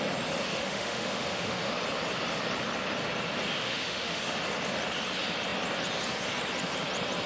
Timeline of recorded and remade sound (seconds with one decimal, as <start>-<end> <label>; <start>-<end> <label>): 0.0-0.5 recorded; 0.5-1.7 remade; 1.7-3.6 recorded; 3.6-4.2 remade; 4.2-7.3 recorded